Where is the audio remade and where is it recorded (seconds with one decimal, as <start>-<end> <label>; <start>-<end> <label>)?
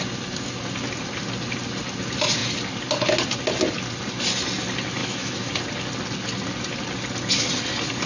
0.0-5.0 recorded; 5.0-5.5 remade; 5.5-8.1 recorded